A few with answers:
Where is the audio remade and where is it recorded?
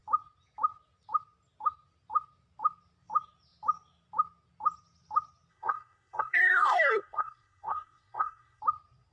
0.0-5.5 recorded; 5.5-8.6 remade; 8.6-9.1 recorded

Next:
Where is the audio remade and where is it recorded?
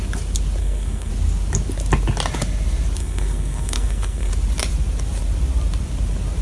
0.0-0.6 recorded; 0.6-1.1 remade; 1.1-3.0 recorded; 3.0-4.3 remade; 4.3-6.4 recorded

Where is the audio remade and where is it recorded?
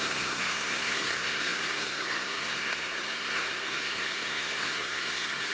0.0-5.5 remade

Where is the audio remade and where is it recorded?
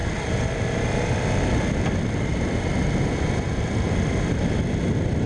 0.0-5.3 recorded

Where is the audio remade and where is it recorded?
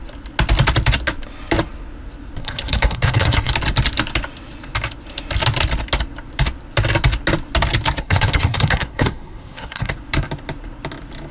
0.0-2.4 recorded; 2.4-3.5 remade; 3.5-8.0 recorded; 8.0-9.9 remade; 9.9-11.3 recorded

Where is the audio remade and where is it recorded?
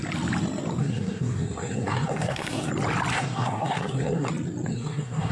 0.0-0.8 recorded; 0.8-2.7 remade; 2.7-3.1 recorded; 3.1-4.3 remade; 4.3-4.7 recorded; 4.7-5.3 remade